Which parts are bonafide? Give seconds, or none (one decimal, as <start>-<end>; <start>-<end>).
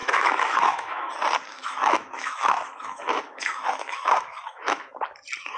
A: 1.1-1.5; 4.9-5.6